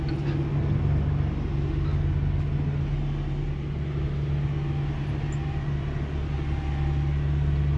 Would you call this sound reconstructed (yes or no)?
no